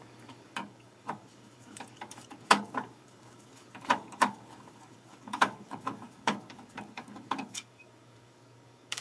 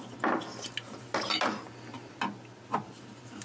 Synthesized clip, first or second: first